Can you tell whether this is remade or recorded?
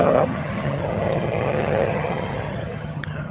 remade